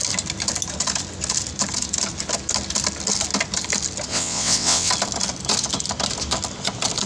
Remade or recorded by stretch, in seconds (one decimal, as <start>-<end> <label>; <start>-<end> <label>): 0.0-4.1 recorded; 4.1-4.9 remade; 4.9-7.1 recorded